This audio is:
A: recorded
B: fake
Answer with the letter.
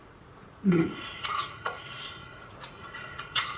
B